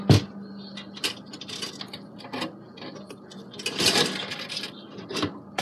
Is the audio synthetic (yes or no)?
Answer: no